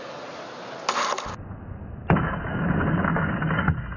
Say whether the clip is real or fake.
real